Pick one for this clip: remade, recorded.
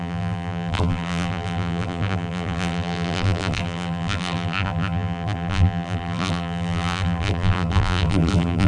remade